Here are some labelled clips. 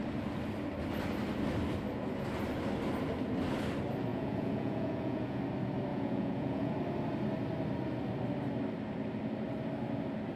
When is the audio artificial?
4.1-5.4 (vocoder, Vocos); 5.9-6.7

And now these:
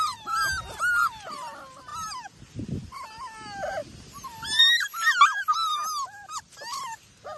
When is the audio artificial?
none

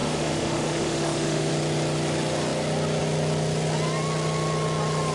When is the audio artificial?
0.0-1.5 (autoencoder, DAC-VAE)

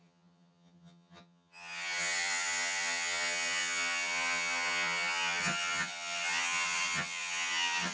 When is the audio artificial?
0.0-7.9 (vocoder, HiFi-GAN)

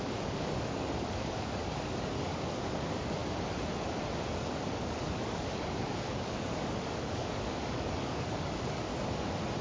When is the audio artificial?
0.0-3.2 (codec, DAC); 4.4-8.9

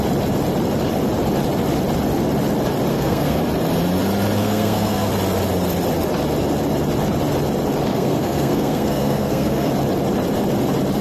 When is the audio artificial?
2.9-3.4 (codec, SNAC); 4.4-5.1; 7.9-9.7

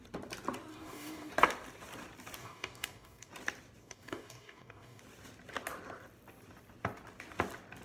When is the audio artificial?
0.7-1.3 (codec, DAC); 2.4-3.3; 3.8-5.0